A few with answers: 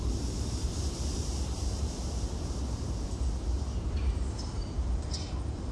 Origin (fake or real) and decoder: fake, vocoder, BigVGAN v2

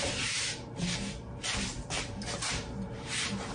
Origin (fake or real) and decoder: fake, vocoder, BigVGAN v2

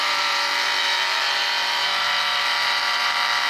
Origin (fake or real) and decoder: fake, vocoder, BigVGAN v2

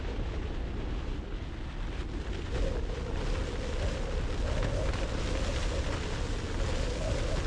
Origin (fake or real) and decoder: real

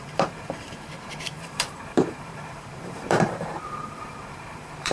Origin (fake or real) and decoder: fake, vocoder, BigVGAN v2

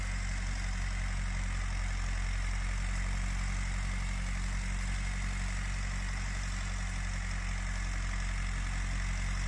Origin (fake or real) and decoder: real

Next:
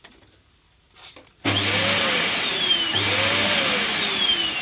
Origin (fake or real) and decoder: real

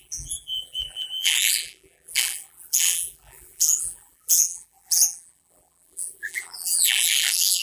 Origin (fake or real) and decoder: fake, vocoder, BigVGAN v2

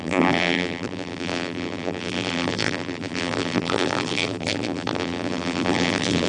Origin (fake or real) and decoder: fake, vocoder, BigVGAN v2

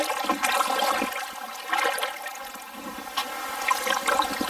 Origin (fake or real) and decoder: real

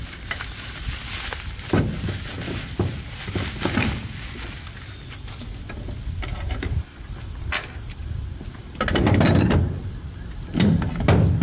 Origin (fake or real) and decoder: real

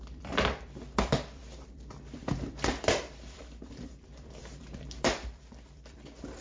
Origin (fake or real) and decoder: fake, vocoder, BigVGAN v2